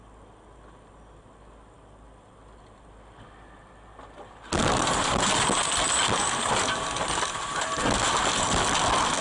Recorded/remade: recorded